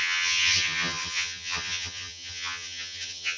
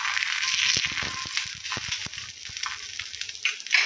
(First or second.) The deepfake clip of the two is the first